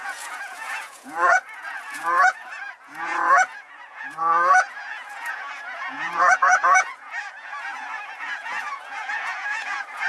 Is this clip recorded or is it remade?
remade